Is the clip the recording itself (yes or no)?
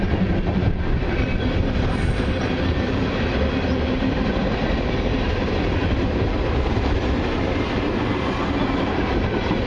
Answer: no